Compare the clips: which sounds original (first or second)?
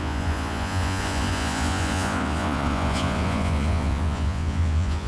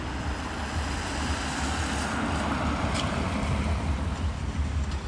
second